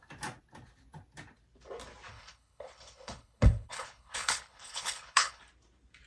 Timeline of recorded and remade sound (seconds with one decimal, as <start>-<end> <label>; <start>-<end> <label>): 0.0-2.1 recorded; 2.1-5.4 remade; 5.4-6.1 recorded